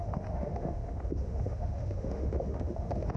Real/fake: fake